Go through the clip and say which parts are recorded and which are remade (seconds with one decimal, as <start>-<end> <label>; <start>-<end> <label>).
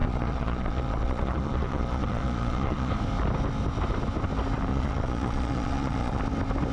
0.0-2.9 remade; 2.9-4.7 recorded; 4.7-6.2 remade; 6.2-6.7 recorded